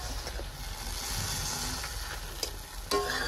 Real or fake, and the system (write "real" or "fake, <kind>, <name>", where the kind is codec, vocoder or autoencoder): real